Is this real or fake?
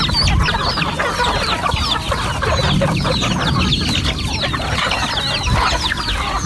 real